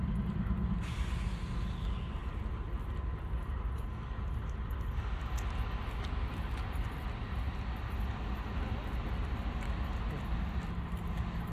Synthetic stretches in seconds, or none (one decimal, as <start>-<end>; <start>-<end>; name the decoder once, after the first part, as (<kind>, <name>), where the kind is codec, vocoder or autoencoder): none